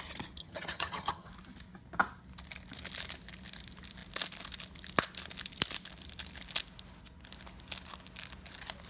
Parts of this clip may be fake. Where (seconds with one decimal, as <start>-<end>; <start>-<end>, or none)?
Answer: 0.4-1.3